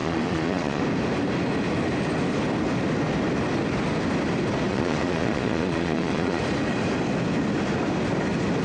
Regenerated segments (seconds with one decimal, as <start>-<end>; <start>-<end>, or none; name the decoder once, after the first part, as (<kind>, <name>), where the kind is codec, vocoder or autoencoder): 0.0-0.8 (vocoder, Vocos); 4.7-6.4